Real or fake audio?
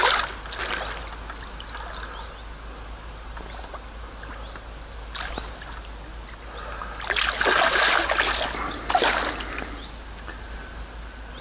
real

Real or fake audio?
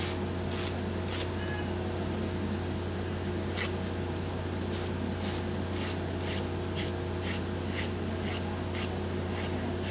real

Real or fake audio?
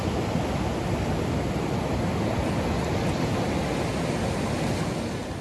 real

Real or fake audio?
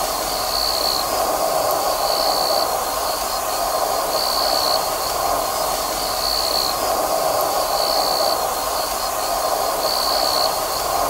real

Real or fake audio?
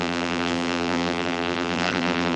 fake